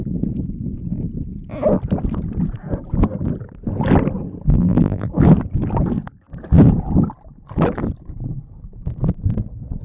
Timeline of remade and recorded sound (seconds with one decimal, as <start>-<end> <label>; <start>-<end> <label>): 0.0-4.5 recorded; 4.5-5.1 remade; 5.1-9.8 recorded